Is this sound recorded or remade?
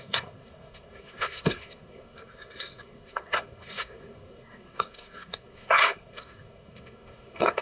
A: remade